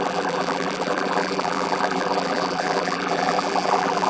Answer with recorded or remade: remade